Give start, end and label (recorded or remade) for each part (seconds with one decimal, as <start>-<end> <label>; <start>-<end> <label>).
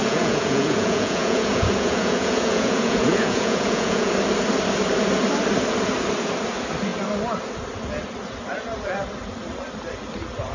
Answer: 0.0-4.1 remade; 4.1-10.5 recorded